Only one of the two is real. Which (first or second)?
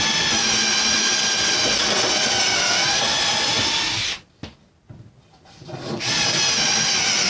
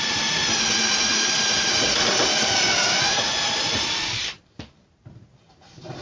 first